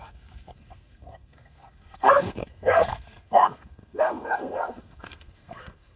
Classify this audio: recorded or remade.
remade